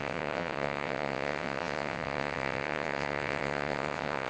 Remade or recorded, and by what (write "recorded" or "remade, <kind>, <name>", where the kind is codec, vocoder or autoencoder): remade, vocoder, WaveNeXt